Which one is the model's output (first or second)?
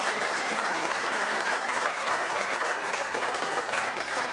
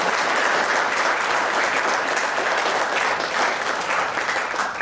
first